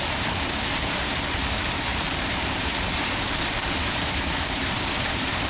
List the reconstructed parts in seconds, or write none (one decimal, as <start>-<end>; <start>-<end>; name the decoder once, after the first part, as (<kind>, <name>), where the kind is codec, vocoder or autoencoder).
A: 0.0-5.5 (vocoder, BigVGAN v2)